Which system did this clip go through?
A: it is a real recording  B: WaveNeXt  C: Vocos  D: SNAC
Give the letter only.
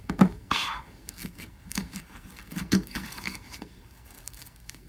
D